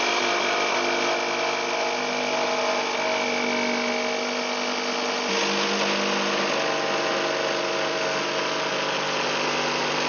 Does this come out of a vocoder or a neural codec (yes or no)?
no